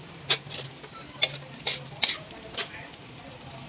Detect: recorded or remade recorded